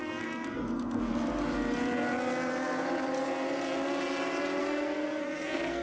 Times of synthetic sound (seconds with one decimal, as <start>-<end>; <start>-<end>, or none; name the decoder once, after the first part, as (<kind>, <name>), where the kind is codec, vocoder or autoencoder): 0.0-1.1 (codec, SNAC); 4.6-5.8